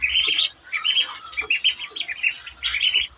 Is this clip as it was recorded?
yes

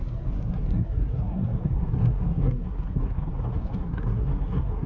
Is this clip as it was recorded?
no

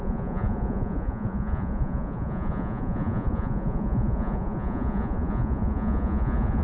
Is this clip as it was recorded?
no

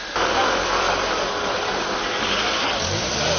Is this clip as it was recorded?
yes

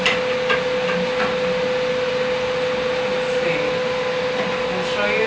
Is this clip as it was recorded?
yes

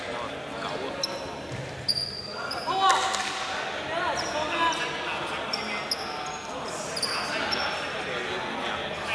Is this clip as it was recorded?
yes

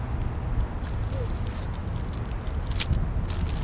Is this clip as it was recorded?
yes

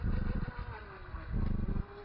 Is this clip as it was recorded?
yes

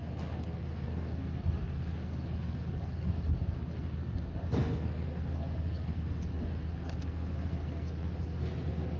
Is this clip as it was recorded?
no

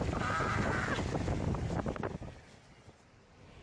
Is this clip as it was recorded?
yes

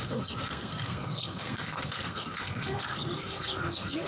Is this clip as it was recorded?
no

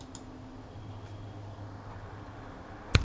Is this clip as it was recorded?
yes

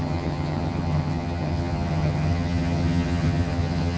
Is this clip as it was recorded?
no